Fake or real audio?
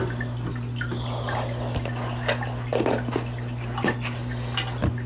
real